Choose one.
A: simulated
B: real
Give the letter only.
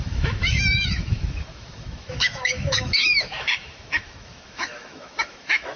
A